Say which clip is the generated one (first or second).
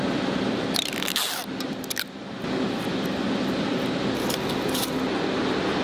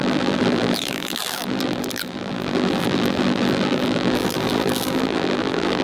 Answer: second